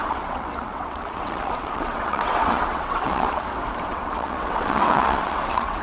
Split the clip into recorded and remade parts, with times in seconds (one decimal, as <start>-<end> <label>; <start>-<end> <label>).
0.0-3.5 remade; 3.5-3.9 recorded; 3.9-5.8 remade